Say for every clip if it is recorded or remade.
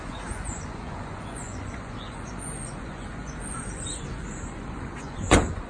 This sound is remade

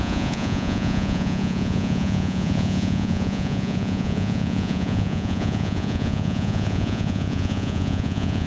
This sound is remade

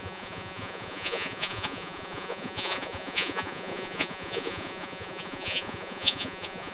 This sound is remade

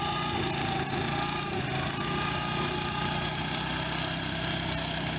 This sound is recorded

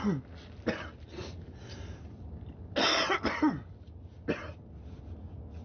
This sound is recorded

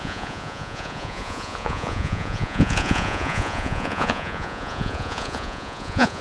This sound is remade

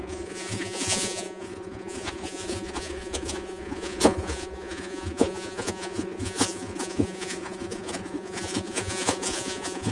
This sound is remade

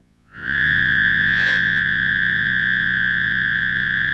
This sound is remade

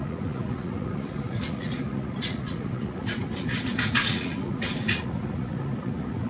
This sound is remade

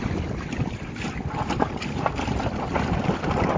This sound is recorded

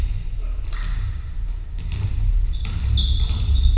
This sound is recorded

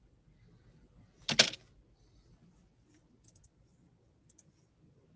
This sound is recorded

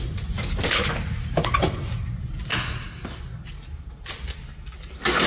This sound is recorded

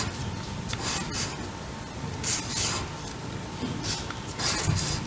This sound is recorded